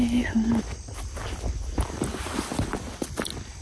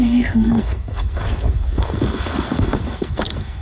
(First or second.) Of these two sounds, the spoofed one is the second